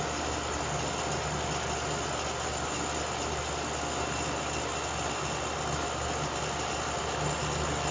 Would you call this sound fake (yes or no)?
no